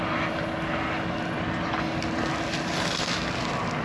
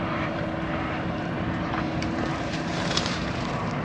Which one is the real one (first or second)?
first